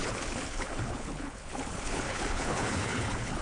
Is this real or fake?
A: fake